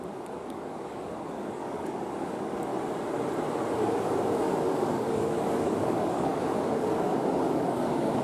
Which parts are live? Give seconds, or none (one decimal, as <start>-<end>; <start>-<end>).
2.7-3.8